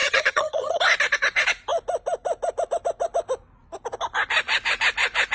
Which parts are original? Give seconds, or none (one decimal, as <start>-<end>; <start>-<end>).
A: 0.8-5.3